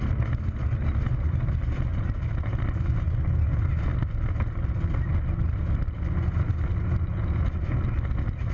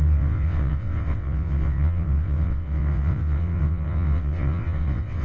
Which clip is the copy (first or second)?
second